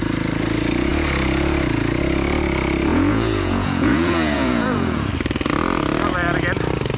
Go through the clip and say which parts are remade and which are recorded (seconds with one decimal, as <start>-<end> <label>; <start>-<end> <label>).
0.0-2.9 recorded; 2.9-5.1 remade; 5.1-7.0 recorded

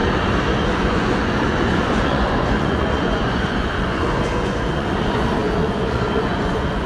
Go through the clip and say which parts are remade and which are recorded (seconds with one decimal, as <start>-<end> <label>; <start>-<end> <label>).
0.0-0.6 recorded; 0.6-6.9 remade

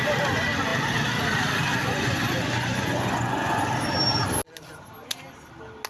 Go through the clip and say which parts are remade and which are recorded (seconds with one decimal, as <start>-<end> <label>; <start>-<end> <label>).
0.0-1.7 recorded; 1.7-3.6 remade; 3.6-5.9 recorded

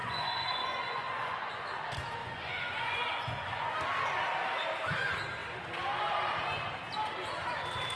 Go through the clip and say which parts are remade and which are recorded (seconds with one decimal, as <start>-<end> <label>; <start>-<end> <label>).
0.0-1.6 remade; 1.6-2.2 recorded; 2.2-3.7 remade; 3.7-8.0 recorded

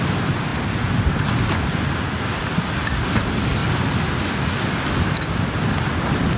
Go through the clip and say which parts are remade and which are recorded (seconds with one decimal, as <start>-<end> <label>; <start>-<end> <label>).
0.0-6.4 recorded